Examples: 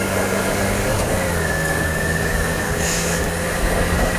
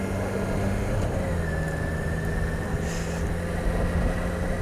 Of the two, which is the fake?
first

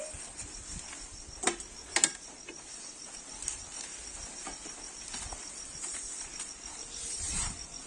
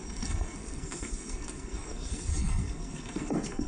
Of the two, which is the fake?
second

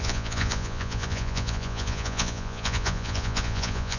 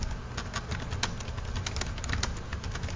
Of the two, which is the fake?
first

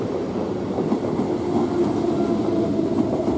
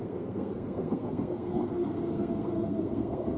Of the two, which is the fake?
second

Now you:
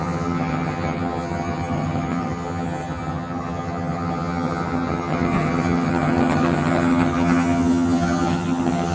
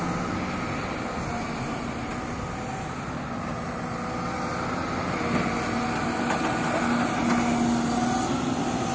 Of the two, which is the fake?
first